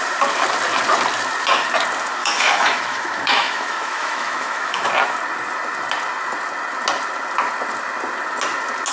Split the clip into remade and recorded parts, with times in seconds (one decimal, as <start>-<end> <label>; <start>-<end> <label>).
0.0-2.2 recorded; 2.2-4.9 remade; 4.9-8.9 recorded